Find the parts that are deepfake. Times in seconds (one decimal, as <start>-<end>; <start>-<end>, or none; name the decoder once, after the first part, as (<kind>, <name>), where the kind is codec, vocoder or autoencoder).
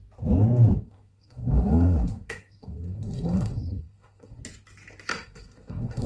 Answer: 0.7-4.4 (codec, SNAC); 5.1-6.1